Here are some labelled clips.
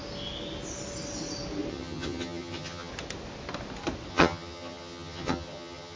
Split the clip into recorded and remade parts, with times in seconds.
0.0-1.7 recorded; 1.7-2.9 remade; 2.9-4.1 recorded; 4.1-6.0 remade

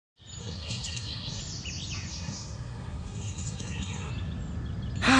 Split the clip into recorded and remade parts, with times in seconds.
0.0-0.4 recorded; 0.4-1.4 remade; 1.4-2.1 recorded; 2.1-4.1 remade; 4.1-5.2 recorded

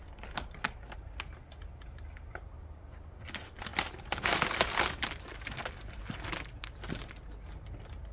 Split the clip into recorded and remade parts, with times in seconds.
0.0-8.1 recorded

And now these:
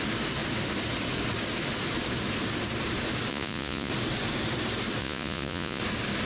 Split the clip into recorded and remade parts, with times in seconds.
0.0-3.3 recorded; 3.3-3.9 remade; 3.9-5.0 recorded; 5.0-5.8 remade; 5.8-6.3 recorded

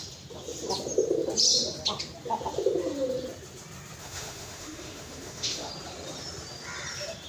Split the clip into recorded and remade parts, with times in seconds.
0.0-4.0 recorded; 4.0-5.7 remade; 5.7-7.3 recorded

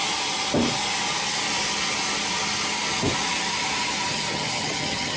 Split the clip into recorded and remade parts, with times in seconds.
0.0-4.1 recorded; 4.1-5.2 remade